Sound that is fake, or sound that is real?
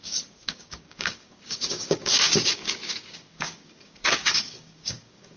fake